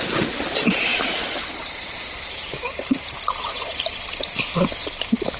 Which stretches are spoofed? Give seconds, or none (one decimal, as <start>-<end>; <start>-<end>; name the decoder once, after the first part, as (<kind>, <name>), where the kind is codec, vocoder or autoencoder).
0.9-3.8 (vocoder, BigVGAN v2)